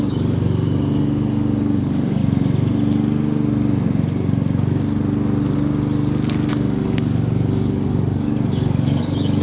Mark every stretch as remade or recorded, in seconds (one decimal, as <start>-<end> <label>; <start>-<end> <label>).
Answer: 0.0-2.2 remade; 2.2-6.5 recorded; 6.5-9.4 remade